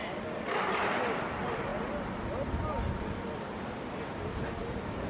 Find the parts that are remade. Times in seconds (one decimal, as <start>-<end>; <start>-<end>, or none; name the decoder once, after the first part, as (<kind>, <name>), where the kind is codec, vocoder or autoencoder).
none